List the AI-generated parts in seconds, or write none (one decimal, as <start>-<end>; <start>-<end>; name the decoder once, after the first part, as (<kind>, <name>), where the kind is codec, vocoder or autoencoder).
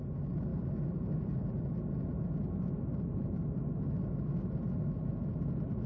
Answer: none